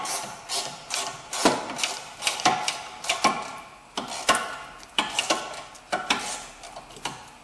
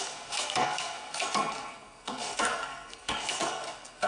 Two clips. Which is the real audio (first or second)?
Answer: first